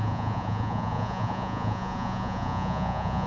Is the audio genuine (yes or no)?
no